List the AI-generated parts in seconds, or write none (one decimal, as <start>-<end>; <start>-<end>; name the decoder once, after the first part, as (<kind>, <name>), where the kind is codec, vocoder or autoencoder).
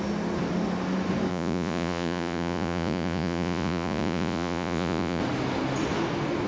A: 1.3-5.2 (vocoder, Vocos)